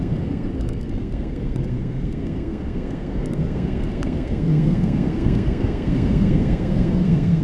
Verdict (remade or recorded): remade